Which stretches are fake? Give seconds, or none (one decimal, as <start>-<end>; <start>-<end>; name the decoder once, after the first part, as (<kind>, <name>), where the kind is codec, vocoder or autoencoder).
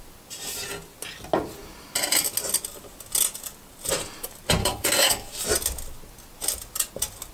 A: 4.6-5.3 (codec, DAC)